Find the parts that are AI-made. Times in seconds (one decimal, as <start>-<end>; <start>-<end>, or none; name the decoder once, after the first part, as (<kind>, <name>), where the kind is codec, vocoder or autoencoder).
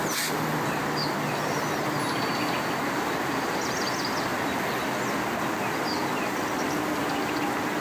none